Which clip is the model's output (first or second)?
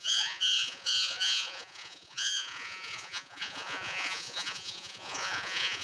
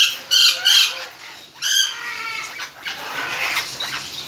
first